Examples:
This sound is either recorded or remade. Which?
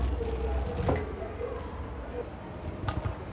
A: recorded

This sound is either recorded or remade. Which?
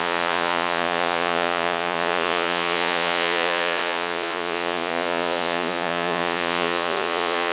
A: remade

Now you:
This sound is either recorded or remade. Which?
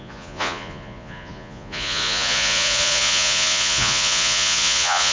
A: remade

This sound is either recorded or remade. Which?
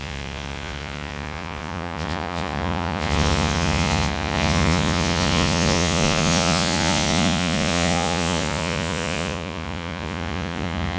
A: remade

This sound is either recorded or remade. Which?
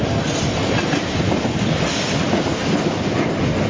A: recorded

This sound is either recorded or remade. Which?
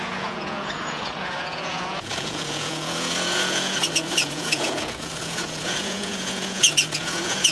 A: remade